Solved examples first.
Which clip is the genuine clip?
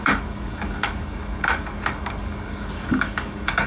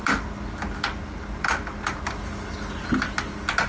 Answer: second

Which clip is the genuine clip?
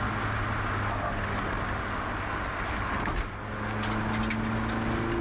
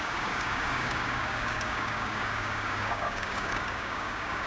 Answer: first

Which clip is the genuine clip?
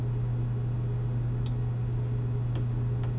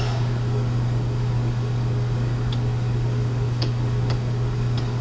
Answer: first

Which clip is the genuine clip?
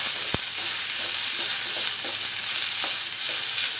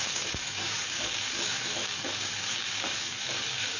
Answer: first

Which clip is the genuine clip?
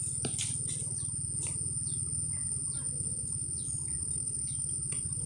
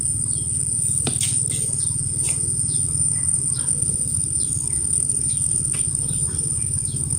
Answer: first